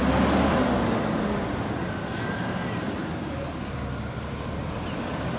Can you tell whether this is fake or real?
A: real